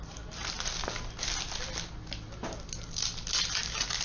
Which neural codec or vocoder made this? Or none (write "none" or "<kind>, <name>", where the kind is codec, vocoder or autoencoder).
none